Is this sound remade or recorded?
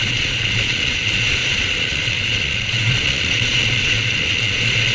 remade